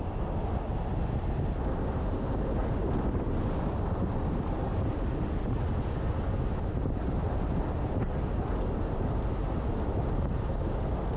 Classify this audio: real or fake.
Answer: real